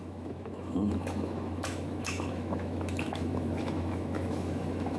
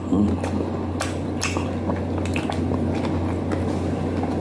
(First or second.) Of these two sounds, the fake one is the first